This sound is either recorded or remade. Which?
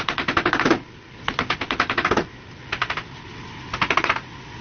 recorded